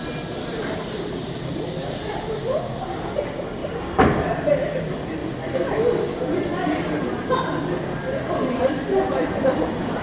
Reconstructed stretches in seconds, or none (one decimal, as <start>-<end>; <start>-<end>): 0.0-10.0